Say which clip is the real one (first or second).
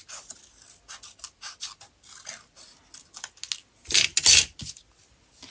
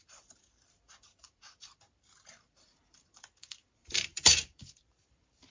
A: first